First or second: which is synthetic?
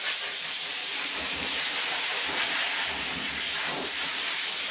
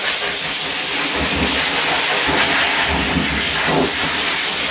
first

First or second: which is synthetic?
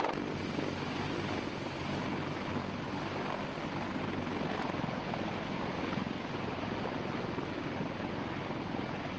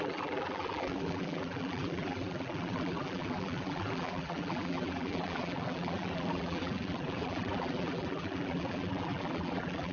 second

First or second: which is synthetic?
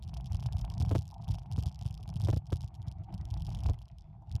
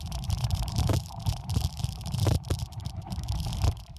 second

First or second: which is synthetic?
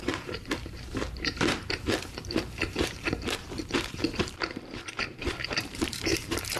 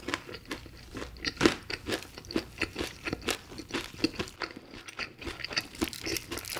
first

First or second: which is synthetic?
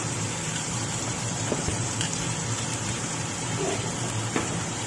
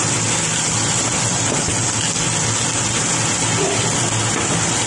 first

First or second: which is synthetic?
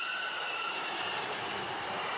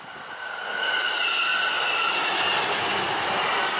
first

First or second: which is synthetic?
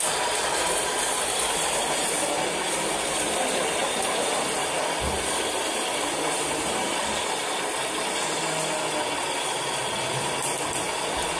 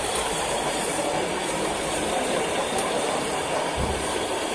second